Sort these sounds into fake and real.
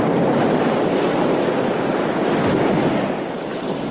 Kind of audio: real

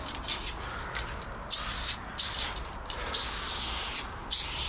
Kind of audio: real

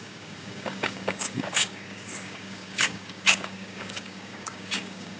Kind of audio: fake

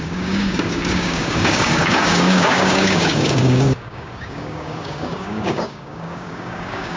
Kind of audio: fake